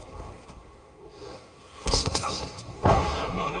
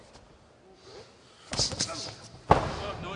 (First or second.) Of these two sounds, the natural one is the second